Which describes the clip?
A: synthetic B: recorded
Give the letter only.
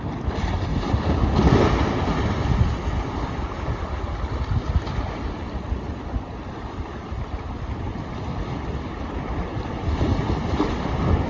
B